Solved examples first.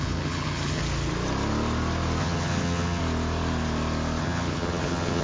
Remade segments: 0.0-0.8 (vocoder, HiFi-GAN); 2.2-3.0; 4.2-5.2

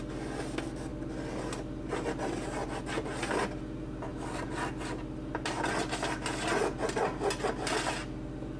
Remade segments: none

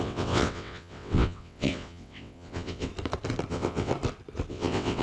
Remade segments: 0.0-2.9 (vocoder, WaveNeXt); 3.5-3.9; 4.5-5.0